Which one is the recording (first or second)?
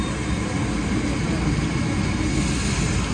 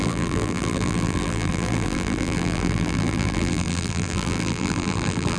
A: first